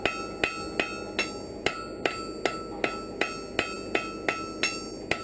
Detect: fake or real real